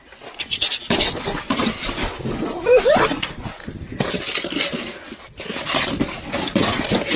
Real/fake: real